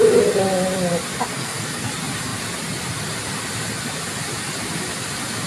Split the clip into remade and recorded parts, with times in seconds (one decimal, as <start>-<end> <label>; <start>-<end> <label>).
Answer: 0.0-1.3 recorded; 1.3-1.9 remade; 1.9-5.5 recorded